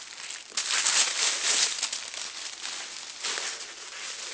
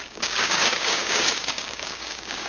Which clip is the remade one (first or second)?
second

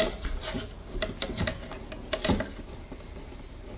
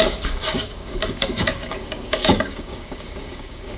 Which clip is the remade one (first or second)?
second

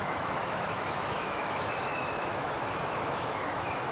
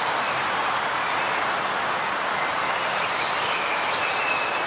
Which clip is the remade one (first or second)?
first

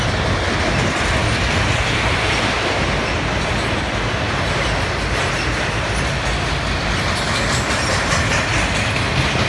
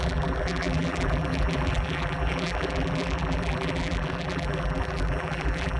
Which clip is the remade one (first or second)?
second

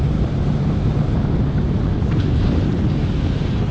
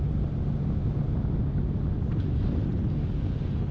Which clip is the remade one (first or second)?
first